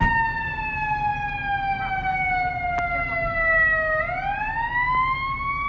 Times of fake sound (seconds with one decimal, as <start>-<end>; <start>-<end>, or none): none